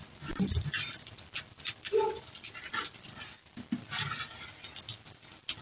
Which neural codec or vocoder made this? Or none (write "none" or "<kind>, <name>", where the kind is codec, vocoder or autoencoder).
none